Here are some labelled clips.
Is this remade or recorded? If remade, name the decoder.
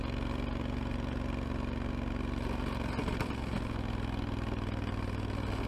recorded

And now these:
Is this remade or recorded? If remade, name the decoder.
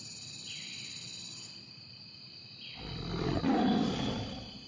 recorded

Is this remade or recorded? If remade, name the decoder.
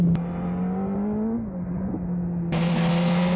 recorded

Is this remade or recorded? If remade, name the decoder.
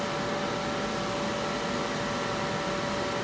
recorded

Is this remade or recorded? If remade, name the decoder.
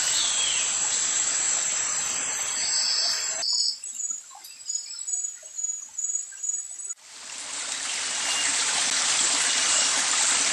recorded